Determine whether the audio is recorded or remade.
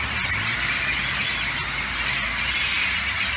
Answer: recorded